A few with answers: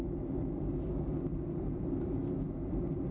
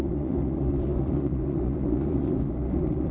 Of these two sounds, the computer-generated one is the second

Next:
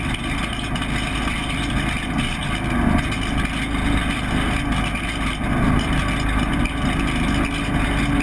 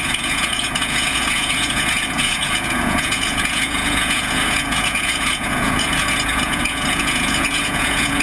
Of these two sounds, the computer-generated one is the second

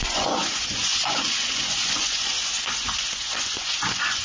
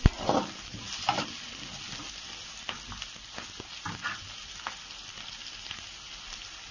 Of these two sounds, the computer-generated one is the first